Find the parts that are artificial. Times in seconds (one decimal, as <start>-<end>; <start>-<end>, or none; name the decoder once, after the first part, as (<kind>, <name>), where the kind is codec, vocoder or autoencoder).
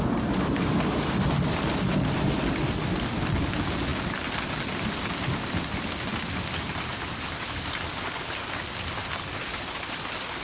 none